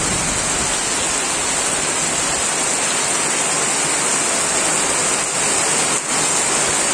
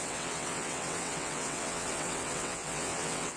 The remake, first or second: second